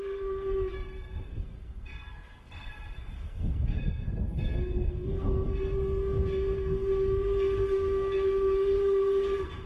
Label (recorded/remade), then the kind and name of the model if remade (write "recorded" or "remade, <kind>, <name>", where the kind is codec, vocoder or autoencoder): remade, codec, SNAC